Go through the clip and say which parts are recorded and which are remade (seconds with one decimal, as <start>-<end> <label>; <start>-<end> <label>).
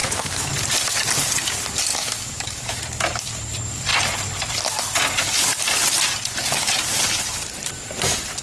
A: 0.0-0.5 remade; 0.5-1.9 recorded; 1.9-2.8 remade; 2.8-8.4 recorded